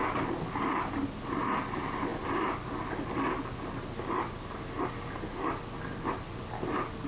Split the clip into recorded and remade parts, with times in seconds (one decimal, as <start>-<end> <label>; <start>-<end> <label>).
0.0-7.1 recorded